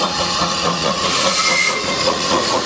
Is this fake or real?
fake